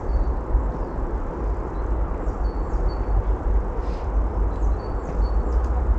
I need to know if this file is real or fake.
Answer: real